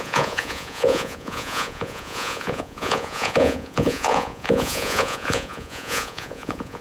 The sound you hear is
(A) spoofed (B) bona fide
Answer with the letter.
A